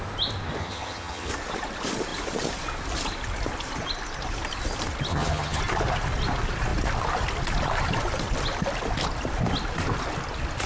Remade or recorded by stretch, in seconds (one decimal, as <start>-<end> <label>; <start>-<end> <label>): 0.0-0.6 recorded; 0.6-1.3 remade; 1.3-5.1 recorded; 5.1-5.6 remade; 5.6-10.7 recorded